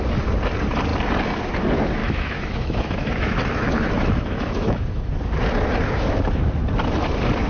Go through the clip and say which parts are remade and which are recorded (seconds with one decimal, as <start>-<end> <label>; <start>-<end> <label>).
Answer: 0.0-2.0 recorded; 2.0-5.1 remade; 5.1-7.5 recorded